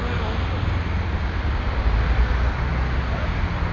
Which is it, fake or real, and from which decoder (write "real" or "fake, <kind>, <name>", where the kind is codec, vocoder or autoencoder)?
real